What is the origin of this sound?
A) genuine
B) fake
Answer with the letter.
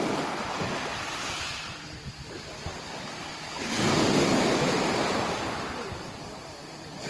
A